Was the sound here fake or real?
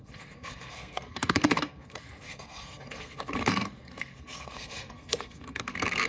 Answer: fake